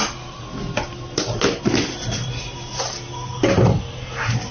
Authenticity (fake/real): real